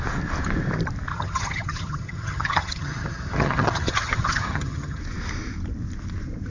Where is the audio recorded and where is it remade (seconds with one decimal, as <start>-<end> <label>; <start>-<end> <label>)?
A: 0.0-1.1 recorded; 1.1-5.0 remade; 5.0-6.5 recorded